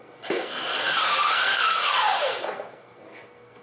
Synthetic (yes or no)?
yes